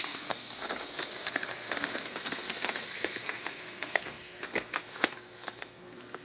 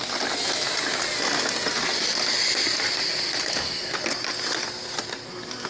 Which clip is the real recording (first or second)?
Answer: second